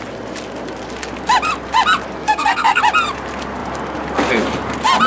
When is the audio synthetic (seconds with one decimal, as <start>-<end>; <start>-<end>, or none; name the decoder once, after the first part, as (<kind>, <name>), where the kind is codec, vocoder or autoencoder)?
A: 2.2-2.8 (codec, SNAC)